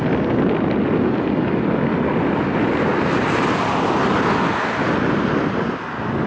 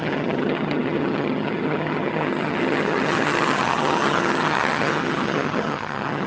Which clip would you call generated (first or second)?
second